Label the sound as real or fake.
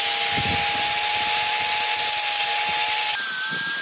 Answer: real